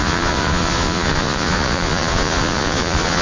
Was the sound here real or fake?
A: fake